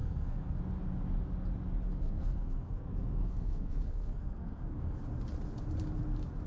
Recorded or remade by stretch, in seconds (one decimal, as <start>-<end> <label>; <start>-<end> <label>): 0.0-0.6 remade; 0.6-1.9 recorded; 1.9-5.0 remade; 5.0-6.5 recorded